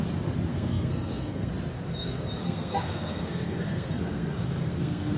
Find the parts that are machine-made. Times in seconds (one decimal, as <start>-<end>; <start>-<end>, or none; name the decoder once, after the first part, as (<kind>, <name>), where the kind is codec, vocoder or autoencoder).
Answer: 0.5-1.5 (codec, SNAC); 2.4-5.2